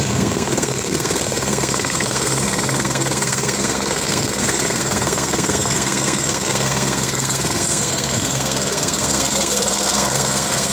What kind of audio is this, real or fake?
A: fake